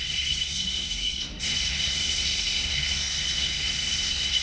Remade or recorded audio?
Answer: remade